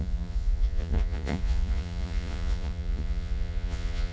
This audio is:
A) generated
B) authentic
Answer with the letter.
A